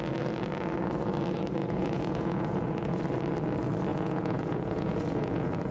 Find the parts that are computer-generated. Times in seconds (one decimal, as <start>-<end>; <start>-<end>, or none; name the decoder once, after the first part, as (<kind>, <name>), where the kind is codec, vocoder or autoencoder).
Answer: 1.6-3.0 (vocoder, Vocos); 3.9-5.7